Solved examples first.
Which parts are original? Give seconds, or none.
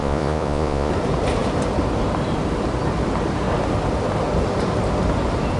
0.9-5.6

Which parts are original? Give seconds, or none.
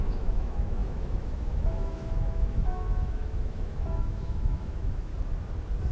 5.1-5.9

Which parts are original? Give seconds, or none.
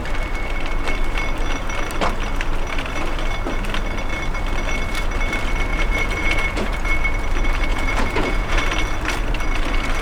0.0-5.7; 6.9-7.7; 8.6-10.0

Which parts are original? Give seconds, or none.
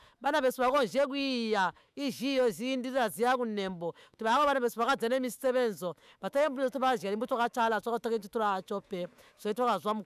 none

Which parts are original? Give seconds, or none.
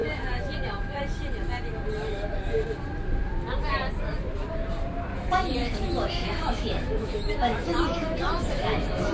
1.0-5.6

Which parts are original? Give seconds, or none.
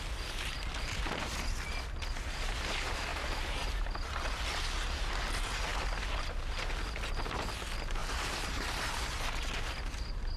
0.0-3.1; 3.7-8.0; 8.9-10.4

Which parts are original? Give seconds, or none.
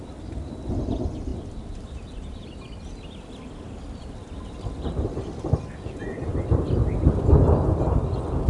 0.0-8.5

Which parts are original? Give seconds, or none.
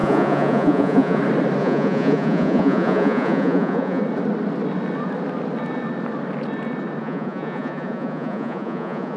1.2-1.6; 4.0-7.0